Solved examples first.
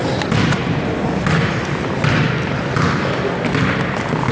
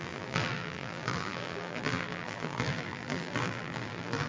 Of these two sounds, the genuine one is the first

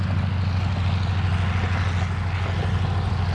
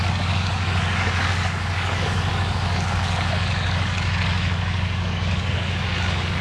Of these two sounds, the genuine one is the first